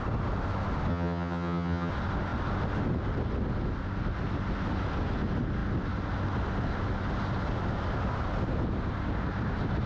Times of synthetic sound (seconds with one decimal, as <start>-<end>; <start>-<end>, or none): 0.9-1.9